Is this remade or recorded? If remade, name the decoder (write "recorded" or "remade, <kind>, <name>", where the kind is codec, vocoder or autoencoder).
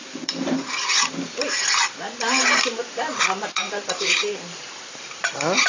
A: remade, vocoder, BigVGAN v2